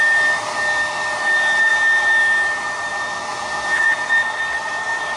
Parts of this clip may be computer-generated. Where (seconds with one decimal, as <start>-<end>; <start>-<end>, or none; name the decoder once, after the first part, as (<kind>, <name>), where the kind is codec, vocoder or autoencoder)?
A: 3.3-4.1 (vocoder, Vocos)